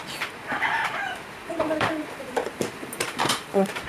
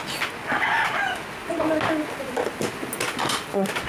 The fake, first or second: first